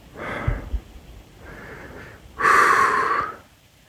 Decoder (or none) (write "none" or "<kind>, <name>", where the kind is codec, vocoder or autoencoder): none